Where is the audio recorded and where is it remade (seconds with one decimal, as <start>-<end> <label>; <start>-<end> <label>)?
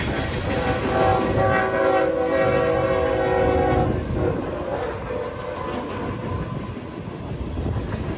0.0-8.2 recorded